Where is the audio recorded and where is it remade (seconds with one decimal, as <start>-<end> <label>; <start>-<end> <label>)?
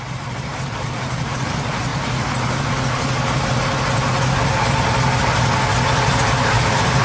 0.0-1.9 remade; 1.9-6.1 recorded; 6.1-7.0 remade